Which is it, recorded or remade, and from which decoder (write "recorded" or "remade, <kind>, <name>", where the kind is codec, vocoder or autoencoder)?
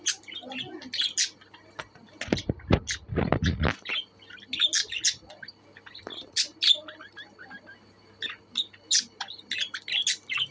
recorded